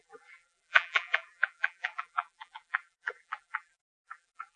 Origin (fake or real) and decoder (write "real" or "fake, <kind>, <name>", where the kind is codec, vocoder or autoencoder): fake, vocoder, BigVGAN v2